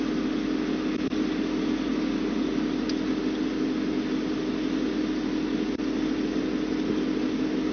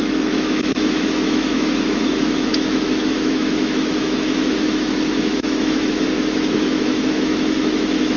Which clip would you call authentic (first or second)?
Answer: first